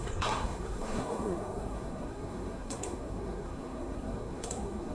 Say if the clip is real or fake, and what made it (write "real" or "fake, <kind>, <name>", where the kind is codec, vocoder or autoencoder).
fake, codec, SNAC